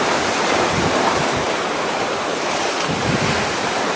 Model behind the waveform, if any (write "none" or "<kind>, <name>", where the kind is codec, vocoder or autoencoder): vocoder, BigVGAN v2